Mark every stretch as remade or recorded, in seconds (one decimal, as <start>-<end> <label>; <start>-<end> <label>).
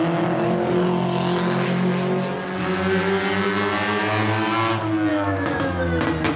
0.0-5.1 recorded; 5.1-6.0 remade; 6.0-6.4 recorded